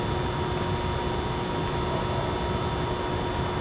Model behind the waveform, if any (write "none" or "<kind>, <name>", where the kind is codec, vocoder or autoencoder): none